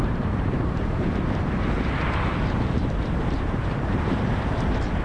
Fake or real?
fake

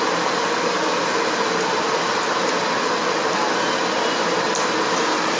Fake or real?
real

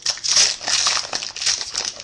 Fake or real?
real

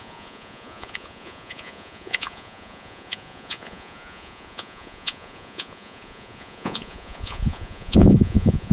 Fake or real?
fake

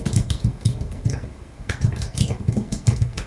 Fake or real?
fake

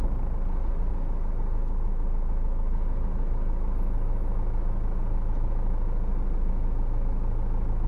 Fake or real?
real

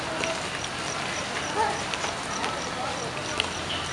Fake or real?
real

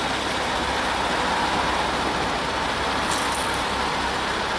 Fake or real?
real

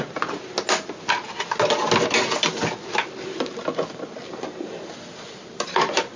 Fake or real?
real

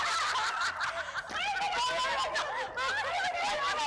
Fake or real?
real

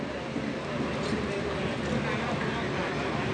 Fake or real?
real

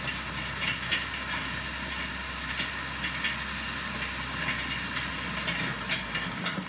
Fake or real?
real